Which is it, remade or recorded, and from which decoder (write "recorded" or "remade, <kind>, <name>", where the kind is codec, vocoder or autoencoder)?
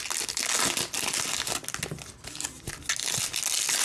recorded